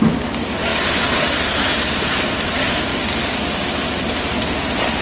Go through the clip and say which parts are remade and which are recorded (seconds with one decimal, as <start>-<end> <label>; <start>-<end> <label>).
0.0-2.9 remade; 2.9-4.1 recorded; 4.1-5.0 remade